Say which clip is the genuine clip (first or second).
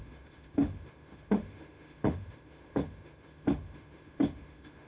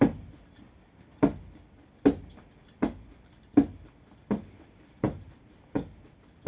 second